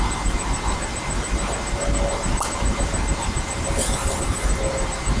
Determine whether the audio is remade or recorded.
recorded